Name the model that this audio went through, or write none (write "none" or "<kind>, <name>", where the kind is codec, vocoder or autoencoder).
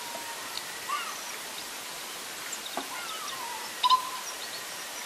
none